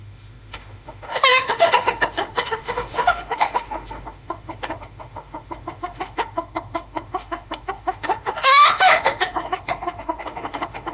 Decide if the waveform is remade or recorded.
remade